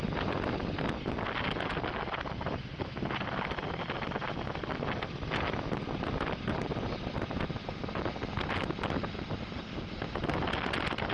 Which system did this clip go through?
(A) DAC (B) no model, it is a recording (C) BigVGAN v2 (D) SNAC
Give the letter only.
B